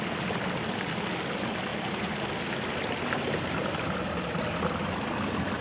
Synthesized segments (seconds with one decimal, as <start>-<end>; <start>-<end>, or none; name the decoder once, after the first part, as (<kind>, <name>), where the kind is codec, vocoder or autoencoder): none